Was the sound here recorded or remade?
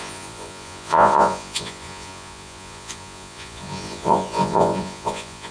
remade